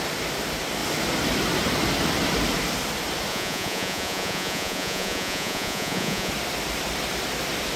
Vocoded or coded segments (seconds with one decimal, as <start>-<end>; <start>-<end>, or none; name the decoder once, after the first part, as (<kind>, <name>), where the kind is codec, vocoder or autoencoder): 3.3-6.3 (vocoder, Vocos)